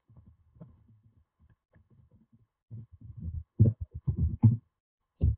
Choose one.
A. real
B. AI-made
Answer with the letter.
B